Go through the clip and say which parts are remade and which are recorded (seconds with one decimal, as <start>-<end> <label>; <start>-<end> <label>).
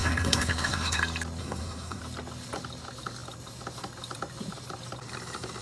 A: 0.0-1.0 remade; 1.0-1.4 recorded; 1.4-2.0 remade; 2.0-5.6 recorded